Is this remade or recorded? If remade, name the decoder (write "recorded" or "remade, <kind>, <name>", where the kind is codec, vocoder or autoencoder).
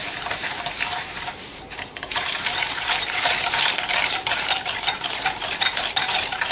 remade, vocoder, BigVGAN v2